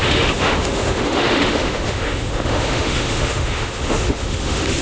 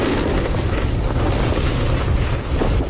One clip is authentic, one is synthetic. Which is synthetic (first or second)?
first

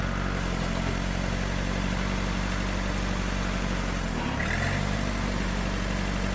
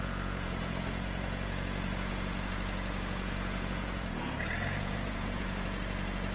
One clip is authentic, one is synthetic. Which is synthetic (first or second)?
second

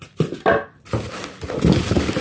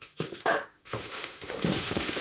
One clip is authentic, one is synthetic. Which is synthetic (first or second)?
second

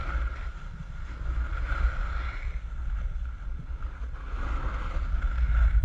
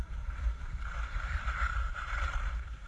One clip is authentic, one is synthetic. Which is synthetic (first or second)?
second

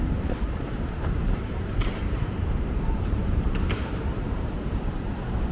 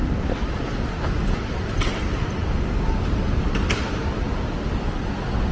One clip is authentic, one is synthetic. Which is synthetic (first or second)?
first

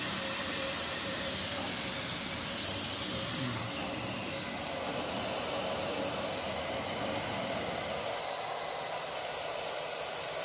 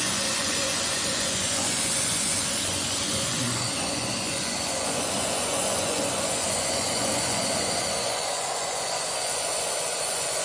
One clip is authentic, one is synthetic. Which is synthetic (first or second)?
second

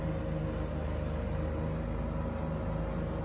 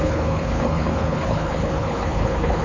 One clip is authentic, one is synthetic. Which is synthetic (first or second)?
second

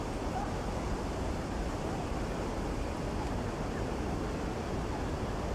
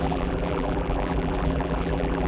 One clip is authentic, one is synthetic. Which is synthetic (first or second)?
second